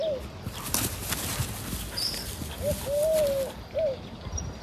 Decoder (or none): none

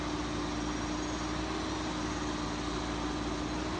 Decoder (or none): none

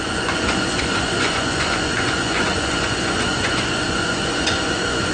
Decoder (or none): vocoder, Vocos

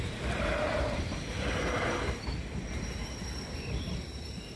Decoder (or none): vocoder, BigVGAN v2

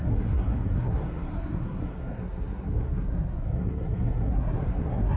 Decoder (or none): codec, SNAC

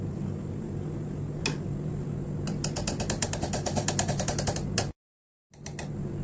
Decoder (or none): none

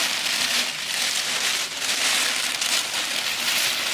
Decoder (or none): none